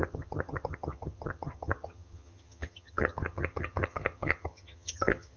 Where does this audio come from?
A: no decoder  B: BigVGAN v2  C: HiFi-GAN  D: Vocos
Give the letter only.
C